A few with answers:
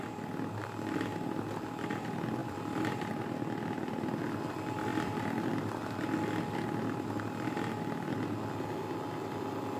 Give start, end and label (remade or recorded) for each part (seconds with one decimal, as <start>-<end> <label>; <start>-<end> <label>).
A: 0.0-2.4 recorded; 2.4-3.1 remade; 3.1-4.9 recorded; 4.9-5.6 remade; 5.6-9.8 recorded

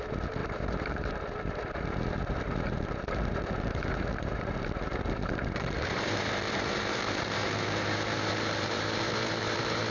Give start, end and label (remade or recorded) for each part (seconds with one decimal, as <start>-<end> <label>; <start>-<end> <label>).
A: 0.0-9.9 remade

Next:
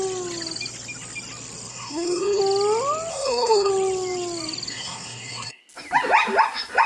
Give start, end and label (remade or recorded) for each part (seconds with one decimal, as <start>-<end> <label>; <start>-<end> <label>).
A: 0.0-1.7 recorded; 1.7-2.4 remade; 2.4-3.1 recorded; 3.1-3.7 remade; 3.7-4.7 recorded; 4.7-5.6 remade; 5.6-6.9 recorded

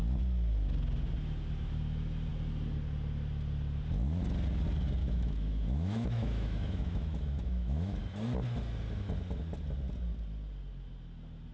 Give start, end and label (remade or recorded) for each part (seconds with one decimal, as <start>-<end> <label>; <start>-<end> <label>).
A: 0.0-5.0 recorded; 5.0-8.0 remade; 8.0-11.5 recorded

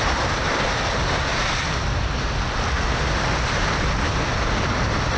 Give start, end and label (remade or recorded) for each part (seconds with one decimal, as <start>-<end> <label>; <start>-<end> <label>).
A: 0.0-5.2 recorded